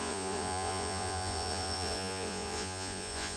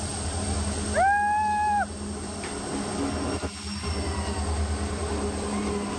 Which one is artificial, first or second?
first